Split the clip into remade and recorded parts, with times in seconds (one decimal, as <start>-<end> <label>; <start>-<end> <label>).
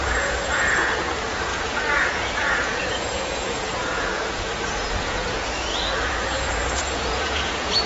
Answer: 0.0-7.9 remade